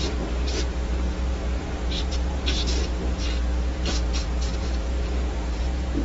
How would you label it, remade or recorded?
remade